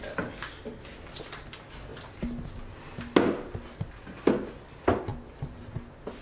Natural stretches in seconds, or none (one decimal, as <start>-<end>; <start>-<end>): 0.0-6.2